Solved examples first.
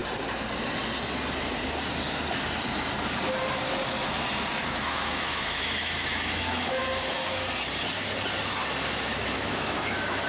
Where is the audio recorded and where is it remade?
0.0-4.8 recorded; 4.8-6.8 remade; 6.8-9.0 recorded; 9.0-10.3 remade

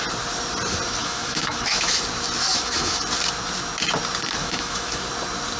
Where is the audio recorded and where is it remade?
0.0-1.0 recorded; 1.0-2.0 remade; 2.0-2.5 recorded; 2.5-3.0 remade; 3.0-4.4 recorded; 4.4-5.0 remade; 5.0-5.6 recorded

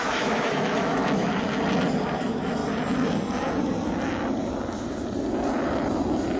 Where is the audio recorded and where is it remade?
0.0-1.2 remade; 1.2-2.2 recorded; 2.2-2.6 remade; 2.6-6.4 recorded

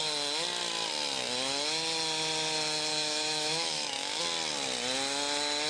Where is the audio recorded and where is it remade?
0.0-2.9 recorded; 2.9-4.2 remade; 4.2-5.7 recorded

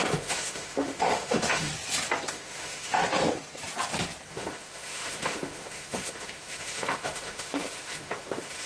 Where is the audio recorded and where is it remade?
0.0-1.7 remade; 1.7-2.3 recorded; 2.3-3.0 remade; 3.0-4.3 recorded; 4.3-8.7 remade

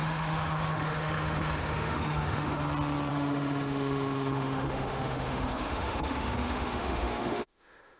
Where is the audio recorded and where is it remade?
0.0-2.6 remade; 2.6-3.1 recorded; 3.1-8.0 remade

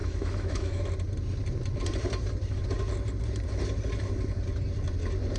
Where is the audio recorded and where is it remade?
0.0-0.8 remade; 0.8-5.4 recorded